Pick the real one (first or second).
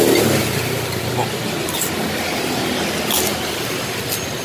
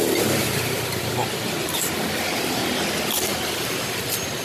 first